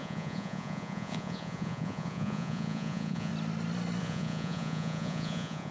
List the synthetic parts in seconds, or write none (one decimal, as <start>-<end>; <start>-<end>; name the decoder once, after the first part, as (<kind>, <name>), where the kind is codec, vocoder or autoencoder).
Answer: 0.0-3.3 (vocoder, Vocos); 4.0-5.7